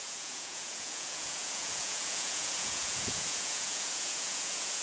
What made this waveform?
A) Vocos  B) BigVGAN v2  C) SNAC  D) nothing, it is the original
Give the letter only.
A